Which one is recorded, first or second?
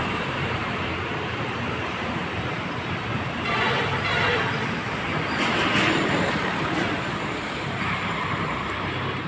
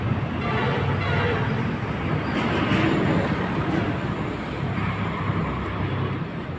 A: second